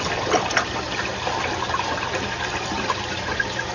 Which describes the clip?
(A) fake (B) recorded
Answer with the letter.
B